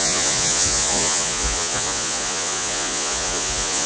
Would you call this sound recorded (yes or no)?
no